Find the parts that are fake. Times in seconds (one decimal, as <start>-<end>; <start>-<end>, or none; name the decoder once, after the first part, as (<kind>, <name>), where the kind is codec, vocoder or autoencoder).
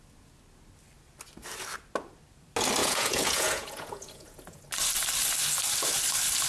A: 2.8-4.6 (vocoder, Vocos)